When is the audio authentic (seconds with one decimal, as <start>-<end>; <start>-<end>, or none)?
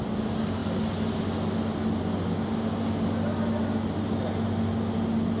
0.0-5.4